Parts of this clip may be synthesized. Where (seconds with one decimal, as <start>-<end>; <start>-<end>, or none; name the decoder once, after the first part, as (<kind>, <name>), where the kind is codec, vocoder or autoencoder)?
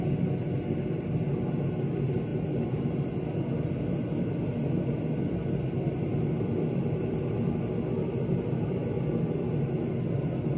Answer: none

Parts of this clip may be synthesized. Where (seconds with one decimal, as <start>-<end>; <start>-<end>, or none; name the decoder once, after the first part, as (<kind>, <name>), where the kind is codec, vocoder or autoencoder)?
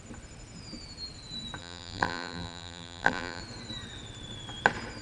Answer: 1.6-3.4 (vocoder, BigVGAN v2)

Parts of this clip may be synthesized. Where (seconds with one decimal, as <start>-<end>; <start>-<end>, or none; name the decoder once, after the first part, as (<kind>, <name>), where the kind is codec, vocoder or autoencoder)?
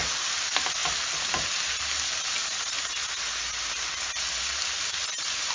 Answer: 0.8-1.5 (vocoder, BigVGAN v2)